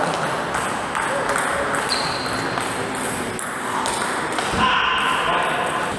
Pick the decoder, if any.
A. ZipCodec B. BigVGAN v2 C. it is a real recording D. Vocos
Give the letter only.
C